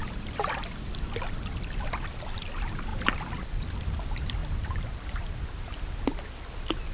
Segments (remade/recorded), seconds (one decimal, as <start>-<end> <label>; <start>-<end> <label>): 0.0-0.6 remade; 0.6-2.9 recorded; 2.9-4.0 remade; 4.0-4.4 recorded; 4.4-5.7 remade; 5.7-6.9 recorded